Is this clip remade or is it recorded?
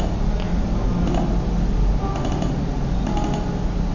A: recorded